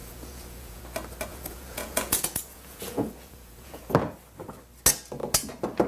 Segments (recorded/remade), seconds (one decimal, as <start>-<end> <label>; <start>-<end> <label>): 0.0-0.8 remade; 0.8-1.3 recorded; 1.3-3.8 remade; 3.8-5.9 recorded